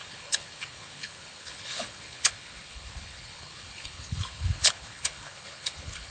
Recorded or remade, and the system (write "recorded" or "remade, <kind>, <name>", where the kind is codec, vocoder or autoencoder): remade, codec, HILCodec